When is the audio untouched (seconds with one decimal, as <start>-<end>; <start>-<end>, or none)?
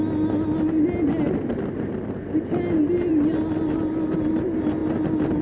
0.0-5.4